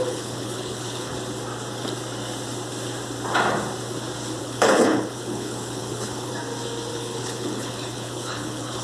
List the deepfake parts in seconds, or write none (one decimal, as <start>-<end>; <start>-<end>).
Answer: 0.0-1.1; 4.4-6.3; 6.9-8.8